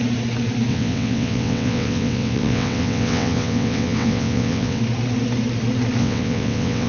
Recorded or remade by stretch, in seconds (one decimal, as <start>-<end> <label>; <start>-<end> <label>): 0.0-0.7 recorded; 0.7-4.8 remade; 4.8-6.0 recorded; 6.0-6.9 remade